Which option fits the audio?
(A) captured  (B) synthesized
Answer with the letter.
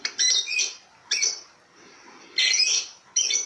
A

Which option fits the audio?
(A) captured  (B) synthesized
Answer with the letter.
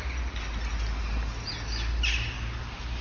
A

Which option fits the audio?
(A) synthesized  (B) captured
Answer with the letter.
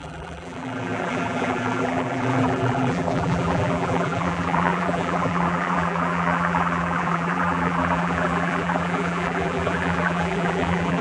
A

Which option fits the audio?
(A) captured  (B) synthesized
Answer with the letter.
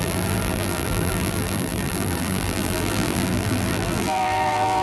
B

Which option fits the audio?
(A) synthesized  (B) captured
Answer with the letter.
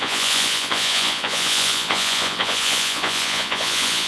A